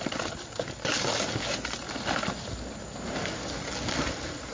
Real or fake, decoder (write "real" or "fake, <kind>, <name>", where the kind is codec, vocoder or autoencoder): real